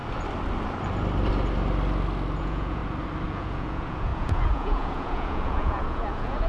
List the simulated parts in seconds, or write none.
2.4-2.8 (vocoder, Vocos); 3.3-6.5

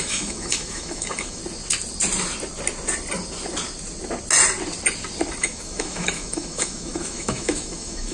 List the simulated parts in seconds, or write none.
0.0-1.4 (autoencoder, DAC-VAE); 5.4-8.1

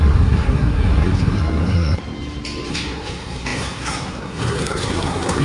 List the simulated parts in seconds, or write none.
0.0-2.0 (codec, SNAC); 2.7-5.4